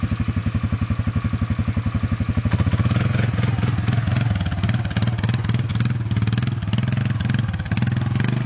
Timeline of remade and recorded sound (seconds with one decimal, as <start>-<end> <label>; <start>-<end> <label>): 0.0-8.5 recorded